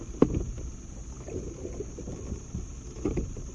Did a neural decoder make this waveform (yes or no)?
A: no